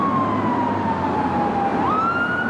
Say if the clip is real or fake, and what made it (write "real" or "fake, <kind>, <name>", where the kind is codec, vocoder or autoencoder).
real